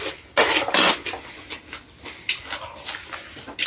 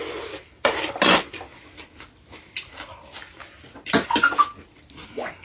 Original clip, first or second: first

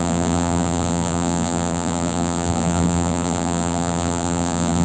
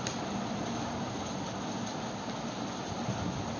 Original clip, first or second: second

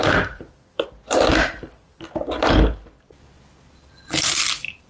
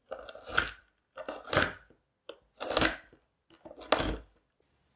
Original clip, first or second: second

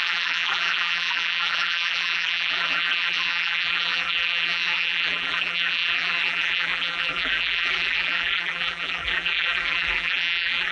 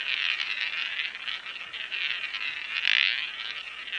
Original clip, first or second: second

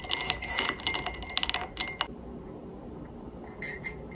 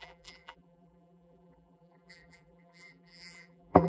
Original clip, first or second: first